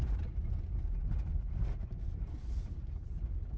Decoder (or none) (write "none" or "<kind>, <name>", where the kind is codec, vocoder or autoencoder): none